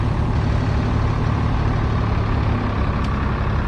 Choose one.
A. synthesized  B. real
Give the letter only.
B